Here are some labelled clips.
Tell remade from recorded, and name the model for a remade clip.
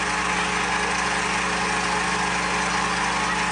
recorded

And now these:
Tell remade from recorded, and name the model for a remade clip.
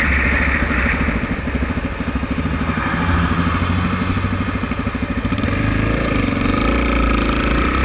recorded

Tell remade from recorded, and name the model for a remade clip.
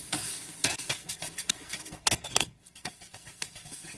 remade, codec, SNAC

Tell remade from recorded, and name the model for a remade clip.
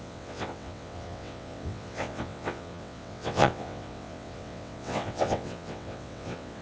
remade, vocoder, WaveNeXt